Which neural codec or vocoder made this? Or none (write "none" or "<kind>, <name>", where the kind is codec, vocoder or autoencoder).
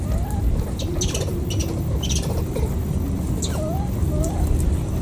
none